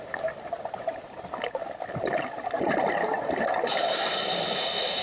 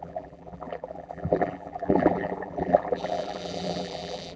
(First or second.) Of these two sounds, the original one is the first